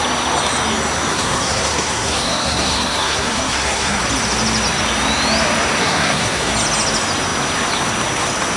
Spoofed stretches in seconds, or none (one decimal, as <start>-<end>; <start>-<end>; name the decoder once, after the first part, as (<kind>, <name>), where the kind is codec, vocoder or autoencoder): 1.1-4.0 (codec, SNAC); 5.8-6.5